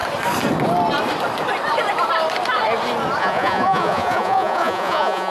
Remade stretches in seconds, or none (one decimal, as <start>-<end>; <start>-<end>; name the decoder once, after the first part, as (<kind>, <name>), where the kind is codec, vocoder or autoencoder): 3.2-5.3 (vocoder, Vocos)